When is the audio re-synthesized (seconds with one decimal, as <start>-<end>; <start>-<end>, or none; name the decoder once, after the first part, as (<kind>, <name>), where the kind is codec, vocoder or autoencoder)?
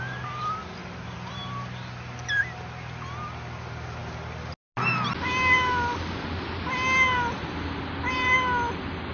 0.8-1.5 (vocoder, BigVGAN v2)